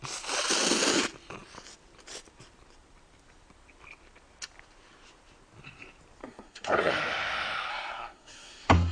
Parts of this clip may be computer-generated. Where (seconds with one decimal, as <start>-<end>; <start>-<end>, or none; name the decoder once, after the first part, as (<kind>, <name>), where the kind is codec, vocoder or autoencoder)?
6.2-6.9 (codec, SNAC); 7.7-8.9